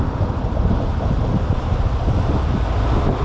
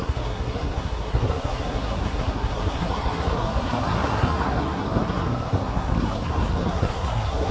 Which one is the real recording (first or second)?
first